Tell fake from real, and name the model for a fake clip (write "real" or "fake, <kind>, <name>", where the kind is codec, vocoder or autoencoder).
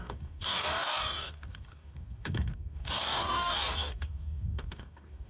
fake, codec, DAC